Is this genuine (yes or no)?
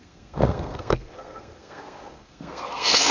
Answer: no